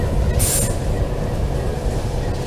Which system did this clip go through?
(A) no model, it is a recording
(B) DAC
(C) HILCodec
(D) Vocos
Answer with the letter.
A